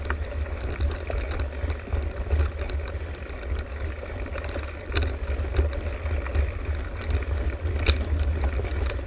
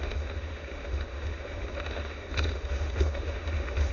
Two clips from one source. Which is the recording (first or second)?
first